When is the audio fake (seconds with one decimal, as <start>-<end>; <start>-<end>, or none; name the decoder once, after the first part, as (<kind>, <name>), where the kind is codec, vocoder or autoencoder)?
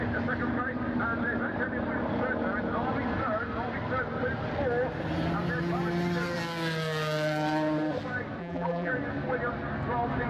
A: 8.4-8.9 (vocoder, BigVGAN v2)